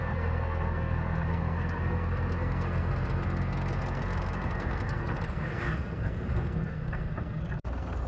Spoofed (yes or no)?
yes